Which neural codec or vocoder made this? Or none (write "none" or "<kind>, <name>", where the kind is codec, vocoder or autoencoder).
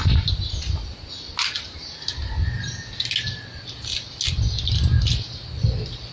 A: none